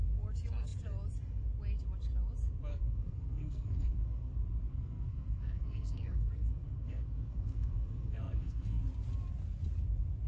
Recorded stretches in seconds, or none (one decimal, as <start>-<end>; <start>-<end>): 0.0-2.7; 4.3-4.7; 8.8-10.3